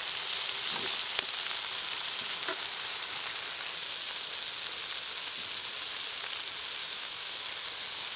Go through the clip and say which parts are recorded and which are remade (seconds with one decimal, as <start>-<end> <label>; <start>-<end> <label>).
0.0-6.8 recorded; 6.8-7.4 remade; 7.4-8.2 recorded